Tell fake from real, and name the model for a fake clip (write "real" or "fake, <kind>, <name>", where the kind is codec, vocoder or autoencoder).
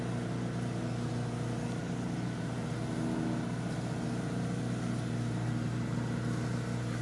real